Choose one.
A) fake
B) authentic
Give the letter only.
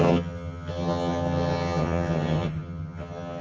A